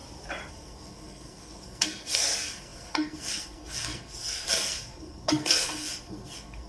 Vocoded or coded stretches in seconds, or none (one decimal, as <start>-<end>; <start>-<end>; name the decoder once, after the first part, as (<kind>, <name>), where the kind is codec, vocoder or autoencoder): 0.5-6.7 (codec, SNAC)